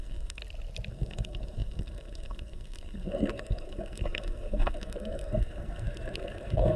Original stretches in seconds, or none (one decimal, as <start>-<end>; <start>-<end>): 0.4-0.9